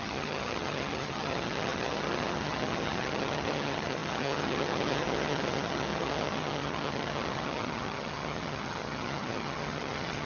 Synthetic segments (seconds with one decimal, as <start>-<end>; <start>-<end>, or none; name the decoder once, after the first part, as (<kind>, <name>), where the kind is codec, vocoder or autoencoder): 0.0-10.3 (vocoder, HiFi-GAN)